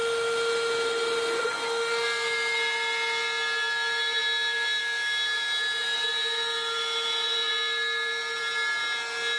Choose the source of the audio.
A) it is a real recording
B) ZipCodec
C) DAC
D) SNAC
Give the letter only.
A